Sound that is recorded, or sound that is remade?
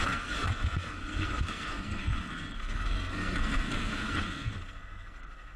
remade